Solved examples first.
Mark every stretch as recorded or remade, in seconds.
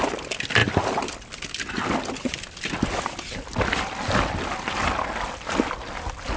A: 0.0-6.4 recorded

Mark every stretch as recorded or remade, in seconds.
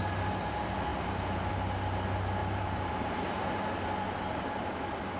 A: 0.0-0.9 recorded; 0.9-1.5 remade; 1.5-2.4 recorded; 2.4-3.7 remade; 3.7-5.2 recorded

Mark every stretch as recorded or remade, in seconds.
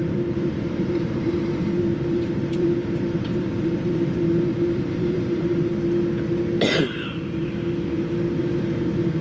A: 0.0-5.7 remade; 5.7-8.4 recorded; 8.4-9.2 remade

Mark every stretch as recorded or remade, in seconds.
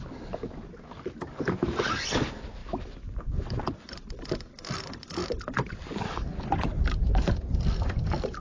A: 0.0-2.6 recorded; 2.6-3.6 remade; 3.6-6.7 recorded; 6.7-7.3 remade; 7.3-8.4 recorded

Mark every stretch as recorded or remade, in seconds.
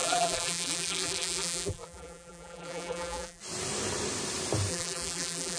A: 0.0-3.4 remade; 3.4-4.7 recorded; 4.7-5.6 remade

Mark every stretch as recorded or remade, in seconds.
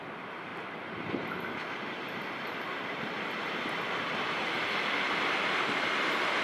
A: 0.0-0.5 recorded; 0.5-3.7 remade; 3.7-6.4 recorded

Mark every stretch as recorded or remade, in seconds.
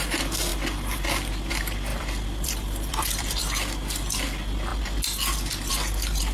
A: 0.0-1.9 recorded; 1.9-3.4 remade; 3.4-6.3 recorded